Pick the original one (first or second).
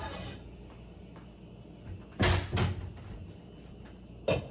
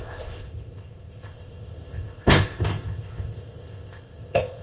first